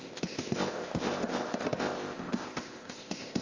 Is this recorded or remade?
remade